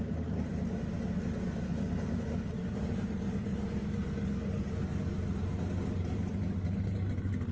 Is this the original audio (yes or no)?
yes